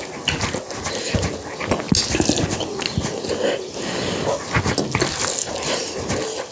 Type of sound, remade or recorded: recorded